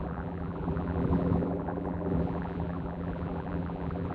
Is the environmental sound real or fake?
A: fake